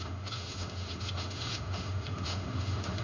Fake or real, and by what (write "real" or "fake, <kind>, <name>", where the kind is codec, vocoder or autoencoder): fake, autoencoder, DAC-VAE